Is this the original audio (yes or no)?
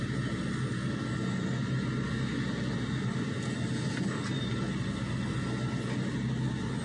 yes